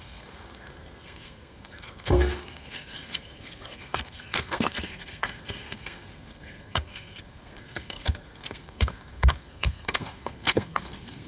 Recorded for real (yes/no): no